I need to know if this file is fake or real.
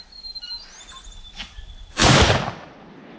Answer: real